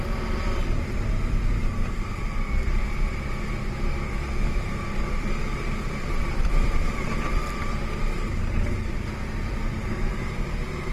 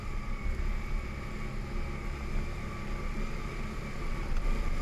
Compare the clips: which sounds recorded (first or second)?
second